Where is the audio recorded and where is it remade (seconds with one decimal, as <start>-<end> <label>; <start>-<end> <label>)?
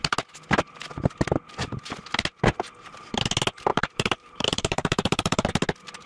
0.0-3.7 recorded; 3.7-5.5 remade; 5.5-6.1 recorded